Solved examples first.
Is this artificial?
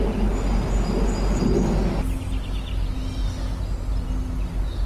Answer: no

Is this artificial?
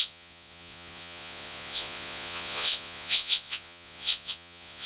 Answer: yes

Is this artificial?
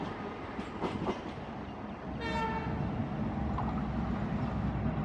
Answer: no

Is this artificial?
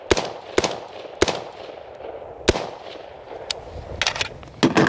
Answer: no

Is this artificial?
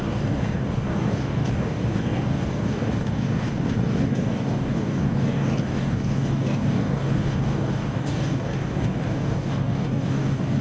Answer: yes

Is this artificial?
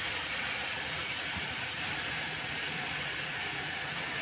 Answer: yes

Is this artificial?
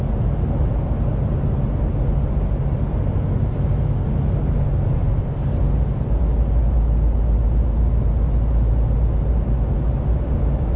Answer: no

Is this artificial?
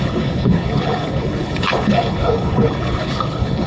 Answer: yes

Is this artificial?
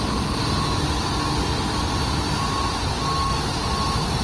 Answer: no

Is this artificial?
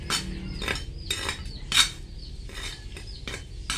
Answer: no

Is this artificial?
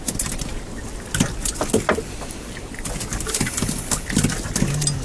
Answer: no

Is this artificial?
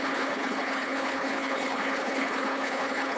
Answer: yes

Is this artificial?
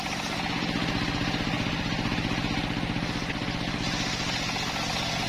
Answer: no